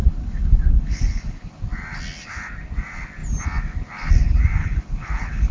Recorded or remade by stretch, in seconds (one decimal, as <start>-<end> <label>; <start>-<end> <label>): 0.0-1.6 remade; 1.6-4.6 recorded; 4.6-5.5 remade